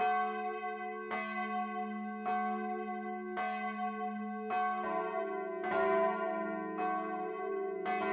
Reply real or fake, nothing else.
real